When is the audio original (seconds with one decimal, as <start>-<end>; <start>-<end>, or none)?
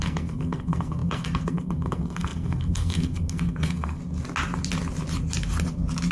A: 4.0-6.1